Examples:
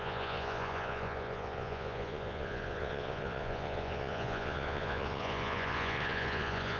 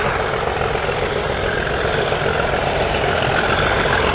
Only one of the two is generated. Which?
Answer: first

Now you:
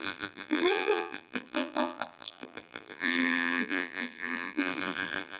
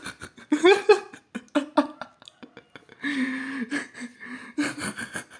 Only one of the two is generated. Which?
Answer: first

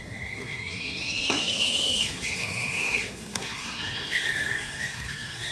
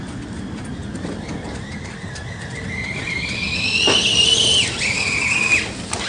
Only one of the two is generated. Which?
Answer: first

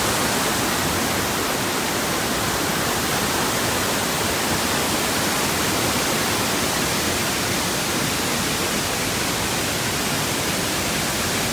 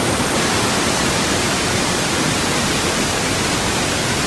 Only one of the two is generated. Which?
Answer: second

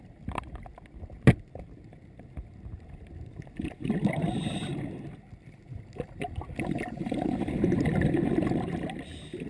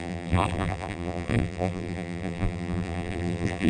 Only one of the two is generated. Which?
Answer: second